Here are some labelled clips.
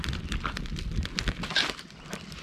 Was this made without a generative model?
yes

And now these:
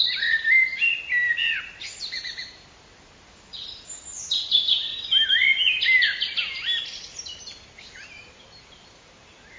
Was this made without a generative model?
no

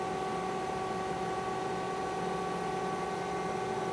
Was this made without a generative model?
yes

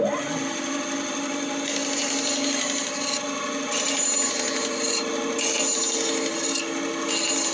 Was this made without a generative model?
yes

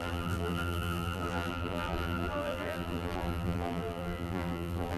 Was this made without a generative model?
no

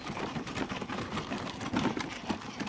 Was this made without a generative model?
yes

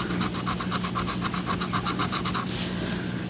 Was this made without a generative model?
yes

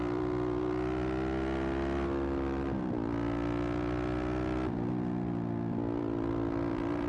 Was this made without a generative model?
no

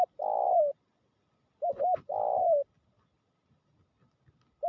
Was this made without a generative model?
yes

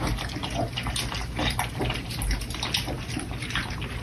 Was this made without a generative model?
yes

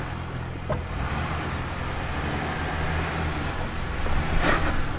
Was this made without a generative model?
yes